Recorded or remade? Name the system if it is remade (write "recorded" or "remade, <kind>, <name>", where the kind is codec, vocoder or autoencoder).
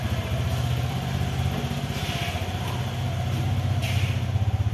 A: recorded